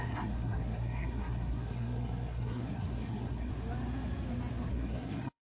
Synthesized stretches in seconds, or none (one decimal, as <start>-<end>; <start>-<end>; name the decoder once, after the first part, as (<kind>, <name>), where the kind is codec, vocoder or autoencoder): 0.0-3.5 (codec, SNAC); 4.7-5.5